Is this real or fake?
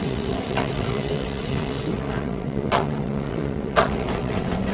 fake